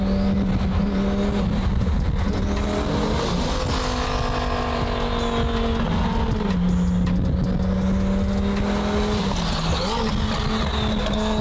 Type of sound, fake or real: real